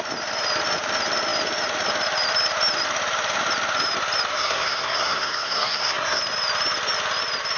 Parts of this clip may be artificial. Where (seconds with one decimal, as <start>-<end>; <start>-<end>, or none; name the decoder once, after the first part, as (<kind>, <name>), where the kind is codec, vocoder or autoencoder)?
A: 4.3-6.2 (codec, SNAC)